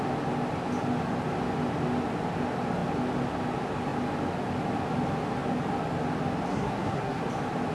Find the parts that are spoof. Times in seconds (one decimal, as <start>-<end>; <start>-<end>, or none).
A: 6.5-7.2